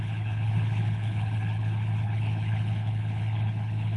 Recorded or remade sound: remade